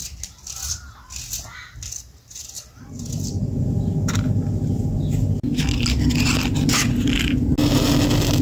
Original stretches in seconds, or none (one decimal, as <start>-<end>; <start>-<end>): 0.0-8.4